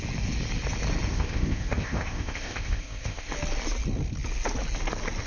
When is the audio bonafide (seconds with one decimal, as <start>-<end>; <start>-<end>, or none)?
0.0-1.1; 3.3-5.3